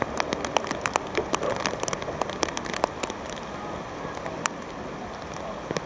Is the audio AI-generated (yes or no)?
no